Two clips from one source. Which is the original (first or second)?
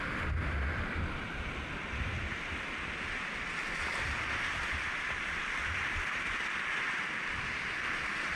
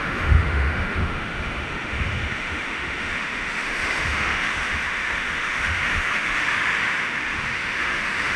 first